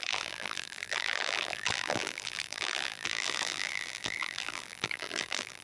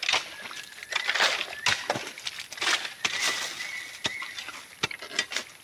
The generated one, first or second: first